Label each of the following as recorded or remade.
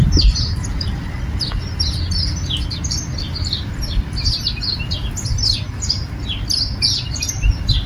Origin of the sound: recorded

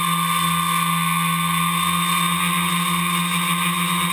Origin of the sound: recorded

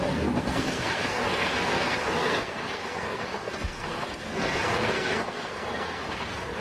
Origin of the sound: remade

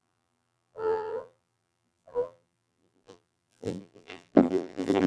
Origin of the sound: remade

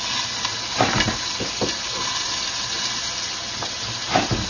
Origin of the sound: recorded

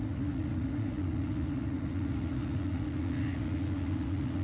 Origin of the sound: remade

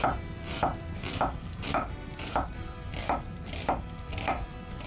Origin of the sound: remade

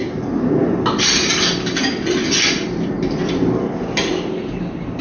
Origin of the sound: recorded